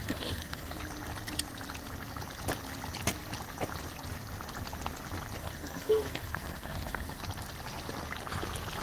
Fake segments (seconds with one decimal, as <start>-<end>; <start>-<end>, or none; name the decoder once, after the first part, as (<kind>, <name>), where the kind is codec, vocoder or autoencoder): 0.0-0.8 (codec, SNAC); 5.4-7.2